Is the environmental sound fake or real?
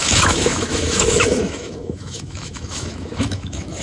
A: fake